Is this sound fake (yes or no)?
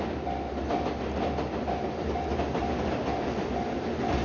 no